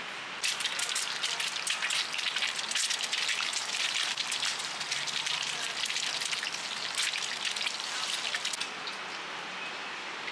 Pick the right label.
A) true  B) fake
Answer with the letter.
A